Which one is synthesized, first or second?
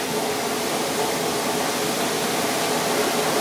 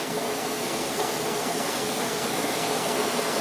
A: second